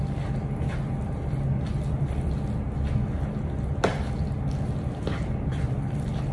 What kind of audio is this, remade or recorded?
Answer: recorded